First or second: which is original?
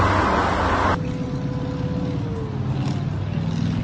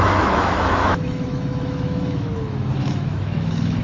first